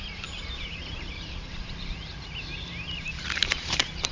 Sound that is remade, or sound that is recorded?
remade